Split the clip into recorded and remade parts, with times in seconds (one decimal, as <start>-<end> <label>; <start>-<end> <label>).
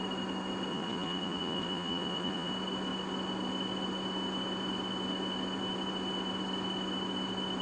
0.0-0.7 recorded; 0.7-2.5 remade; 2.5-7.6 recorded